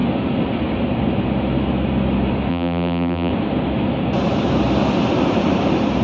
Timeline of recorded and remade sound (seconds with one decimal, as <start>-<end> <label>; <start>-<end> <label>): 0.0-2.5 recorded; 2.5-3.3 remade; 3.3-6.0 recorded